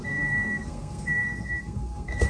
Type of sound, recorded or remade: remade